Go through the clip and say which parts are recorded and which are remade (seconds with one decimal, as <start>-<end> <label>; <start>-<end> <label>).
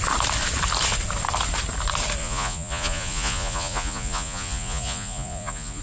0.0-2.2 recorded; 2.2-5.8 remade